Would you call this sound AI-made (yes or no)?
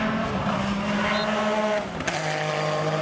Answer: no